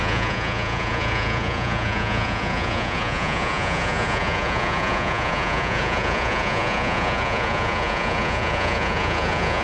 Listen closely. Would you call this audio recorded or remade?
remade